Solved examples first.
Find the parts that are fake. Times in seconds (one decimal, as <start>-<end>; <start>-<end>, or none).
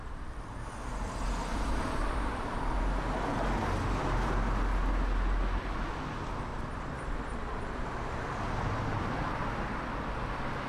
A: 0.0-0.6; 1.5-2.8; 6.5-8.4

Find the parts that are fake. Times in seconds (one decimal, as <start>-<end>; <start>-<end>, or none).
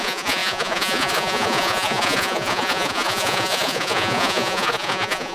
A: 0.0-5.3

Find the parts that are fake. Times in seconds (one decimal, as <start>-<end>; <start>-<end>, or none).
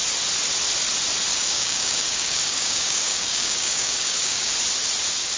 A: 1.3-4.5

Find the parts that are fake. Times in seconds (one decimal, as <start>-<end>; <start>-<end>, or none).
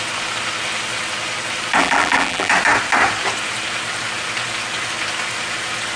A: 1.8-2.5